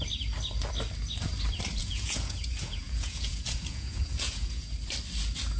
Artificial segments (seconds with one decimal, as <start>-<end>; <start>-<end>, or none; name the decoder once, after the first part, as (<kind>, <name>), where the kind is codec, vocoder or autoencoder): 1.8-4.7 (vocoder, Vocos)